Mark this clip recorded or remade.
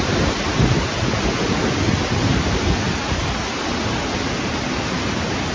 recorded